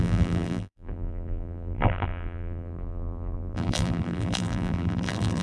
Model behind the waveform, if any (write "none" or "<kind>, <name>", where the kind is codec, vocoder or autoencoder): vocoder, BigVGAN v2